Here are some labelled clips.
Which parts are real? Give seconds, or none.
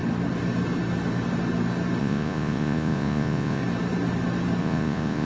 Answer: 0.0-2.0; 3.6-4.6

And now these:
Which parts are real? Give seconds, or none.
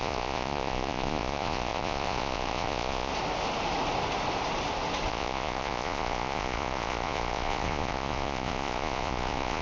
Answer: 3.1-5.1